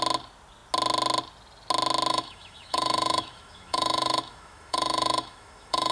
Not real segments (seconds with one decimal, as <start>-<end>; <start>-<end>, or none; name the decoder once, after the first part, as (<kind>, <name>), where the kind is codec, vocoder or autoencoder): 2.1-5.9 (autoencoder, DAC-VAE)